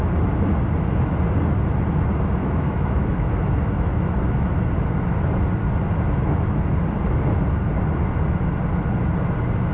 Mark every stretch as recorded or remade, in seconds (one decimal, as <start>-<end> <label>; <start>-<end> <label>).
0.0-2.4 recorded; 2.4-3.3 remade; 3.3-9.7 recorded